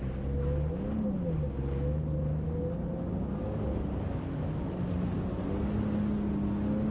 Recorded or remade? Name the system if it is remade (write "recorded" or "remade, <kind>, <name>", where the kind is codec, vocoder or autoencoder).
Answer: recorded